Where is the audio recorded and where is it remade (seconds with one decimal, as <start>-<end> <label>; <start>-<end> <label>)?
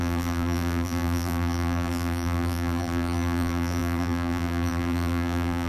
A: 0.0-5.7 remade